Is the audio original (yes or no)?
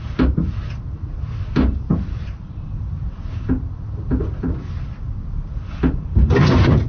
yes